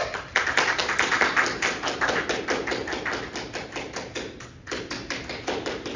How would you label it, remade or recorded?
recorded